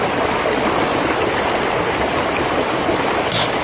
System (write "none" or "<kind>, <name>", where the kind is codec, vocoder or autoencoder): none